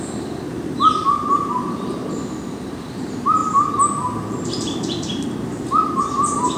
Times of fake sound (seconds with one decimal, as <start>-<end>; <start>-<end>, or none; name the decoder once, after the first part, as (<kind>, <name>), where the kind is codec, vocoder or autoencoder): 0.0-6.6 (vocoder, BigVGAN v2)